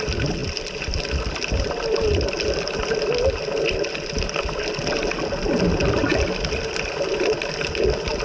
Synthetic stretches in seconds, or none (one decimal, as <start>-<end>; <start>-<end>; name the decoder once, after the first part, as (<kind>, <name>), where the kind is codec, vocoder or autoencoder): none